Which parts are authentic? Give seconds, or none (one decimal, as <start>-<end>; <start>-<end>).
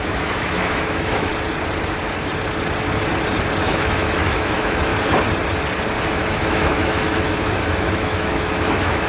1.3-3.6; 4.9-6.0